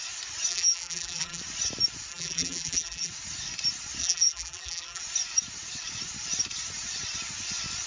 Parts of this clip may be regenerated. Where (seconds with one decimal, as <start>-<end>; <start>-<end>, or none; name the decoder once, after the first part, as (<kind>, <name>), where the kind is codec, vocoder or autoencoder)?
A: 0.5-1.4 (vocoder, BigVGAN v2); 2.1-3.1; 4.0-5.0